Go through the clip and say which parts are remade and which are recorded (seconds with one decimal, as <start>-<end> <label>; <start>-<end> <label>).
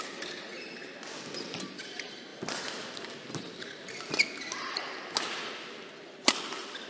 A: 0.0-6.9 recorded